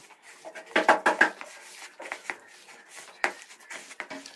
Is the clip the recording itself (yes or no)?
yes